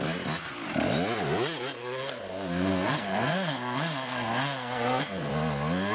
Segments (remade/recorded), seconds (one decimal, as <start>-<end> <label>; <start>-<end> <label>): 0.0-1.8 recorded; 1.8-5.3 remade; 5.3-5.9 recorded